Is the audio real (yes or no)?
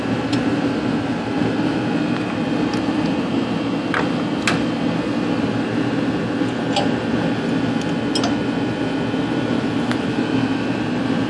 yes